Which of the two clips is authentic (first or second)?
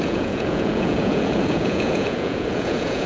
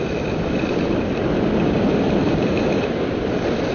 second